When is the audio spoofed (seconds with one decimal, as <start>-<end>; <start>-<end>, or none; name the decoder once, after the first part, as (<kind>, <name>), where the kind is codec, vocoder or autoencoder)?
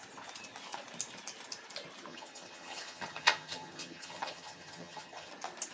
2.1-5.3 (vocoder, HiFi-GAN)